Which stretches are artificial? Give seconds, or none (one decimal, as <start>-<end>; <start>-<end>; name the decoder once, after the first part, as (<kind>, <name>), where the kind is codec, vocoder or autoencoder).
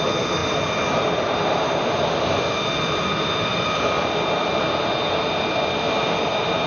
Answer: none